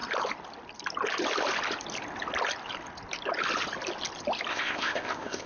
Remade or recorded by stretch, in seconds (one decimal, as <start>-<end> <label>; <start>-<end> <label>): 0.0-4.5 recorded; 4.5-5.5 remade